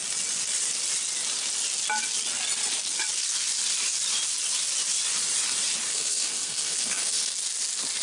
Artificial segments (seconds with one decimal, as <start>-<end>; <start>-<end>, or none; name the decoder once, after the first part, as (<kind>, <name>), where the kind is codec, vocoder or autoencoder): 5.9-7.4 (codec, SNAC)